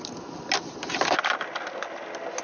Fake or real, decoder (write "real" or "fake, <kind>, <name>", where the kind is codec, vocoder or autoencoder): real